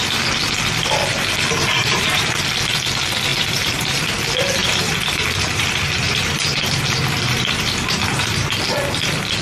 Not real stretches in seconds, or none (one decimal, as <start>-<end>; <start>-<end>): 1.8-2.3; 3.3-4.1; 4.6-8.5